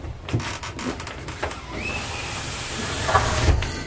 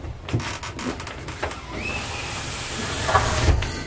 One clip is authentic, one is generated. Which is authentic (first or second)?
second